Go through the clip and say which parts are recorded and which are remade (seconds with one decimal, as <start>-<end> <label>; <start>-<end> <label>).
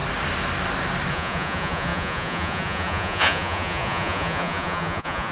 0.0-1.1 recorded; 1.1-5.3 remade